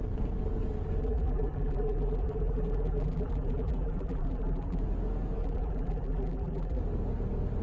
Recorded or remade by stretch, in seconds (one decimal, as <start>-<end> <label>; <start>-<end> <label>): 0.0-1.0 recorded; 1.0-4.8 remade; 4.8-5.4 recorded; 5.4-6.8 remade; 6.8-7.6 recorded